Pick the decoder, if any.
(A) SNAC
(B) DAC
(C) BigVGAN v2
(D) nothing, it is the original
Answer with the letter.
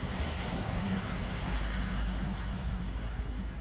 A